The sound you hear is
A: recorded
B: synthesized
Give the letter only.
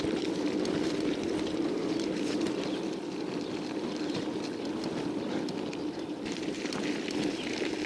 A